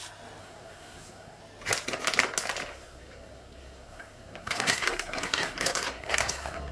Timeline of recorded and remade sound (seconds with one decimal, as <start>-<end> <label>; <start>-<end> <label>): 0.0-0.4 recorded; 0.4-1.4 remade; 1.4-2.7 recorded; 2.7-6.7 remade